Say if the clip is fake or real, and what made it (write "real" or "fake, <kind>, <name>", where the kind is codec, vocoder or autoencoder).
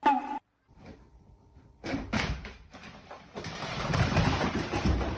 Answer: fake, vocoder, BigVGAN v2